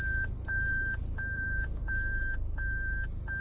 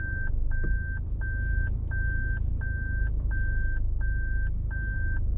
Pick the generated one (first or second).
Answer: first